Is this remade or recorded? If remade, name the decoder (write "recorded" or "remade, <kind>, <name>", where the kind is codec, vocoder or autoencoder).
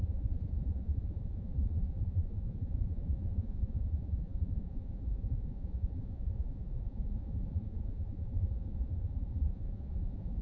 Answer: remade, vocoder, Vocos